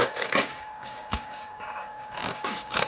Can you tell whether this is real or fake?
fake